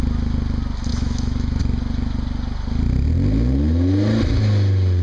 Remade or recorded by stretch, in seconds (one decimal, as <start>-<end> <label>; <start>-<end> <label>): 0.0-0.9 recorded; 0.9-1.6 remade; 1.6-5.0 recorded